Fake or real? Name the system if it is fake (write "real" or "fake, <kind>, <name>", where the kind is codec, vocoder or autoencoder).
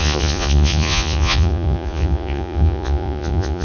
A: fake, vocoder, Vocos